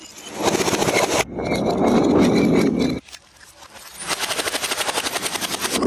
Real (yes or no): yes